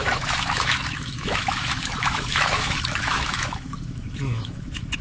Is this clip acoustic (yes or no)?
no